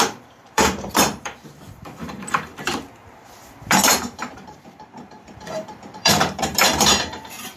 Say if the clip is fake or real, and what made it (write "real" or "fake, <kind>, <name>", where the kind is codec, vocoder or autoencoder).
fake, vocoder, BigVGAN v2